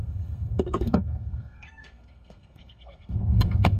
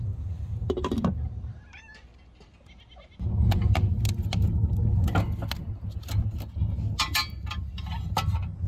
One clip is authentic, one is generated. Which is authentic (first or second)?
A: second